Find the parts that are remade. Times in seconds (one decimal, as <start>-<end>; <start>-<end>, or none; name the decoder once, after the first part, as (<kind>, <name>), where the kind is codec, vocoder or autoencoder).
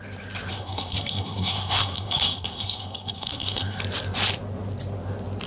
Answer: 0.5-3.8 (codec, SNAC)